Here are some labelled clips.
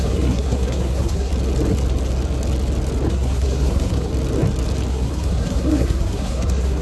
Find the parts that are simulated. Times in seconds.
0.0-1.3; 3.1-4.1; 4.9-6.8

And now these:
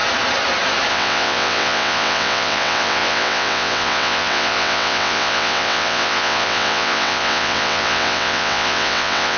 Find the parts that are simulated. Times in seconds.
0.9-9.4